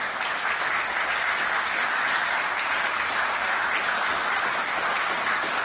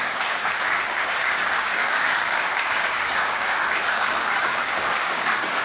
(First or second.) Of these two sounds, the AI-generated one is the second